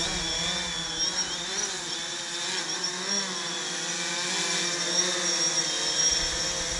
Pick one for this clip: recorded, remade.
recorded